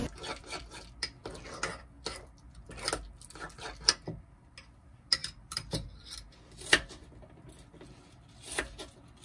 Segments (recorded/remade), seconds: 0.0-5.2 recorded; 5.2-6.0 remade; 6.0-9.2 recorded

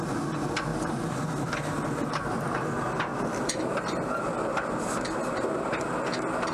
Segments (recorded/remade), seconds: 0.0-0.7 recorded; 0.7-2.3 remade; 2.3-6.5 recorded

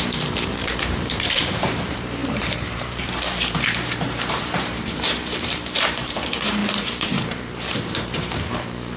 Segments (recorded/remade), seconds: 0.0-9.0 remade

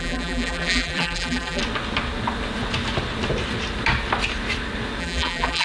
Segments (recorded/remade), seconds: 0.0-1.6 remade; 1.6-5.0 recorded; 5.0-5.6 remade